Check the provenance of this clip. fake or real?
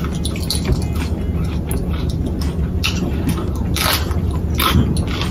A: real